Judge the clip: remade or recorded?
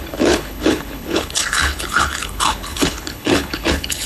remade